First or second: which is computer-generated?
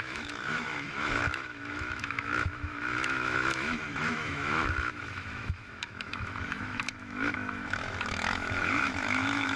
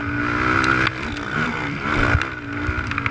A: first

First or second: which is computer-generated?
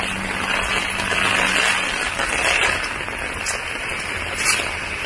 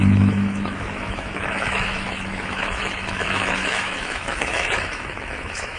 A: second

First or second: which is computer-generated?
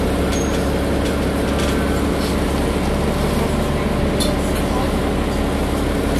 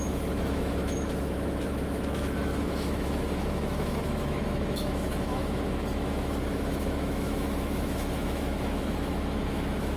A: second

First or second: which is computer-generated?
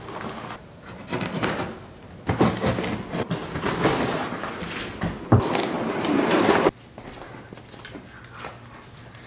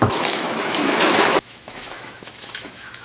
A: second